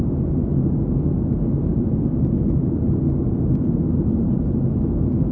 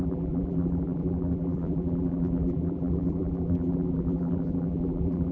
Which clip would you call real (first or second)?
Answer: first